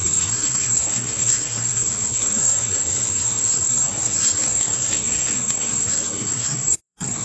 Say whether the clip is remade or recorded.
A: remade